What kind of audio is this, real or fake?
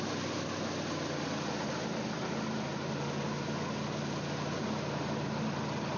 real